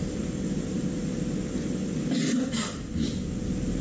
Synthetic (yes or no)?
no